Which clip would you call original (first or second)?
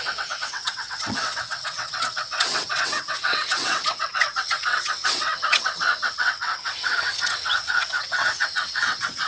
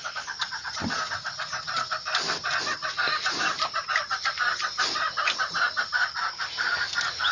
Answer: second